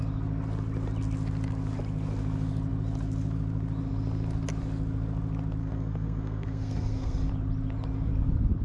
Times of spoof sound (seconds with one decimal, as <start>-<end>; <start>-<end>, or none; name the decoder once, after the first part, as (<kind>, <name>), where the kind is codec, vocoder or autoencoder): 5.6-7.3 (codec, SNAC)